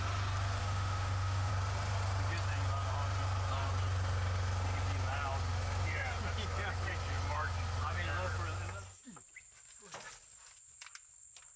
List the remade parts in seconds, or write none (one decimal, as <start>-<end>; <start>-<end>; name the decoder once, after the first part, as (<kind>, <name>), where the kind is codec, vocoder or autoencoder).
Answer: 0.6-1.5 (autoencoder, DAC-VAE)